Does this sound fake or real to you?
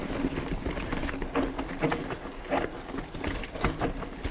real